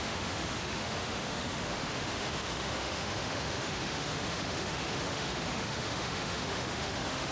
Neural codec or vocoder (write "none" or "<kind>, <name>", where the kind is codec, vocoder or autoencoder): autoencoder, DAC-VAE